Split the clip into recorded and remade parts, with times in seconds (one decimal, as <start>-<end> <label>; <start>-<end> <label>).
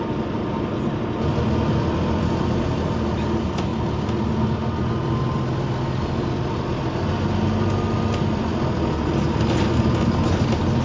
0.0-10.8 recorded